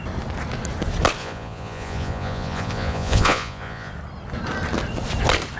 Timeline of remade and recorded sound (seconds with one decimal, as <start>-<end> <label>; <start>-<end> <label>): 0.0-1.2 recorded; 1.2-3.9 remade; 3.9-5.6 recorded